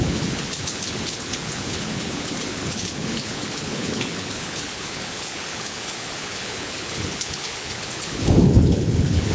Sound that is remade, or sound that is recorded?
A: remade